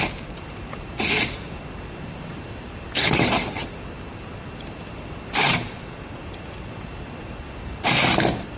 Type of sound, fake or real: fake